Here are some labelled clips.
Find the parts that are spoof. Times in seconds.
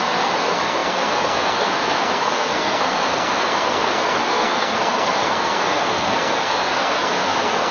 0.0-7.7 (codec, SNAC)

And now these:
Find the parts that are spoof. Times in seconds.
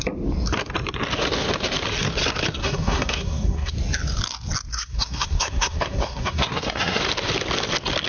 2.6-3.7 (codec, SNAC); 4.7-7.0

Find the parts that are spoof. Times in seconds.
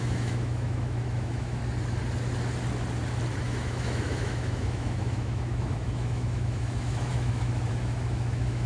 0.0-1.6 (autoencoder, DAC-VAE); 3.4-8.7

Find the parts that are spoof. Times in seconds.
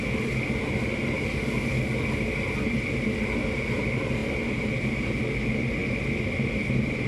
none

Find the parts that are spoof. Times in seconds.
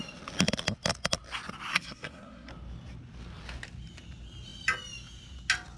1.7-2.5 (codec, SNAC)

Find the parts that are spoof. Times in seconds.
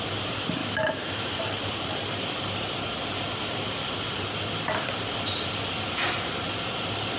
0.6-1.4 (autoencoder, DAC-VAE)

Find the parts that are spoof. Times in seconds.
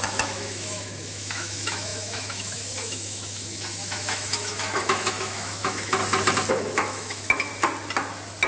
0.0-6.0 (autoencoder, DAC-VAE); 6.5-7.5